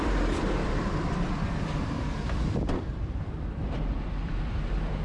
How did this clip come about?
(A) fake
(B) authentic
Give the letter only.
A